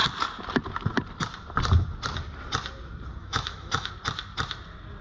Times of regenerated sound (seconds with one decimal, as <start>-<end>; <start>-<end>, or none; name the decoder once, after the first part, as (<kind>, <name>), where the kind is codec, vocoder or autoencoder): 3.2-3.9 (autoencoder, DAC-VAE)